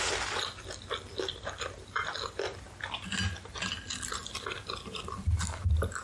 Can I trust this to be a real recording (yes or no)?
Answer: yes